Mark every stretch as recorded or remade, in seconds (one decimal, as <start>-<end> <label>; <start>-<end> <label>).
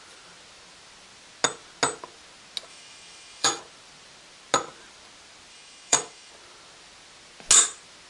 0.0-2.7 recorded; 2.7-3.6 remade; 3.6-5.5 recorded; 5.5-6.3 remade; 6.3-8.1 recorded